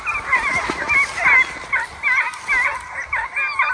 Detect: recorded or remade recorded